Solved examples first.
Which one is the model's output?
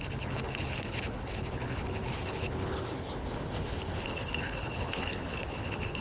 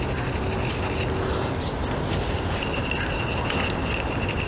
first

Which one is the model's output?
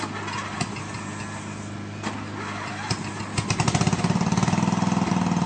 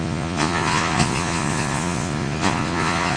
second